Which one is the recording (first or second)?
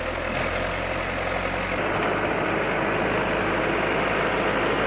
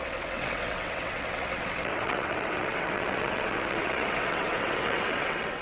first